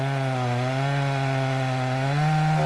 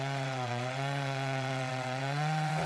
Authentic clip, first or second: first